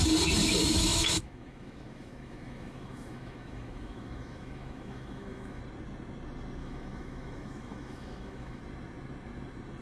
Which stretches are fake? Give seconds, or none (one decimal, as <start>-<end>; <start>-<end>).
0.6-5.6; 6.6-8.6